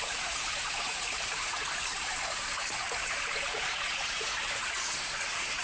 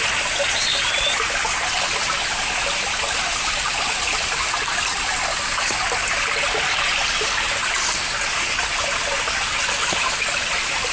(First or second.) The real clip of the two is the second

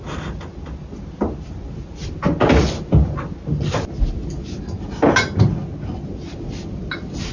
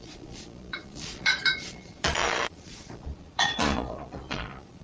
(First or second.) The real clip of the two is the first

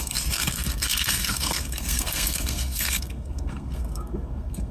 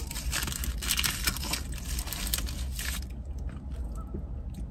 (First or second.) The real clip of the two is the second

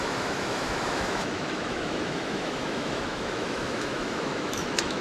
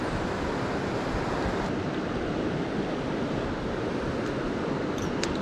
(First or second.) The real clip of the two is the second